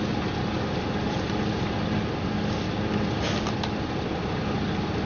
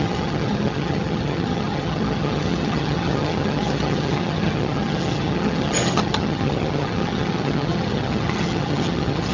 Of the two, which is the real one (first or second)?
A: first